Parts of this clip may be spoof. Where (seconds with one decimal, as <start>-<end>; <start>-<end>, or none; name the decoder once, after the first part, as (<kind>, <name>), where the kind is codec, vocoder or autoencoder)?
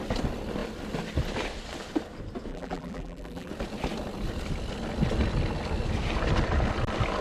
2.5-3.5 (vocoder, BigVGAN v2)